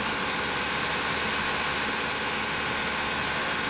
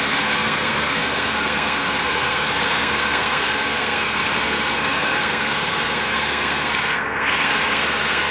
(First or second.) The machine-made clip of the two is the second